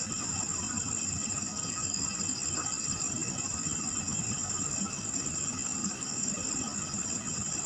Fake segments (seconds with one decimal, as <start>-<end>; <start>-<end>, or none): 1.5-2.0; 5.8-6.3